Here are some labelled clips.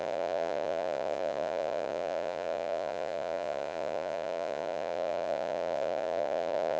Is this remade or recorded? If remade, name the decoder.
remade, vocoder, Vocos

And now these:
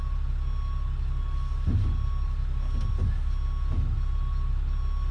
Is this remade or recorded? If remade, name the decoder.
recorded